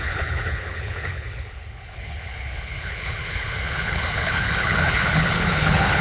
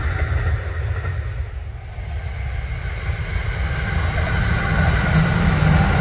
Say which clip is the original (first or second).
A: second